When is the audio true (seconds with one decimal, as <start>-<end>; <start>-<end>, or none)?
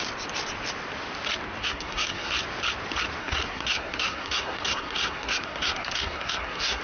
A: 0.0-1.6; 2.3-3.2